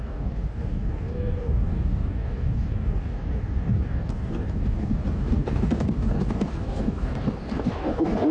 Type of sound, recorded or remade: remade